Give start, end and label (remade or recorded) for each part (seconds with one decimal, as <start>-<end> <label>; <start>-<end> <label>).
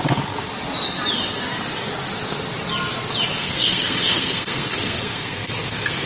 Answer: 0.0-3.4 recorded; 3.4-6.1 remade